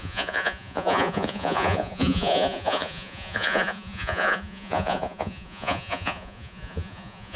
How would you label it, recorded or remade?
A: remade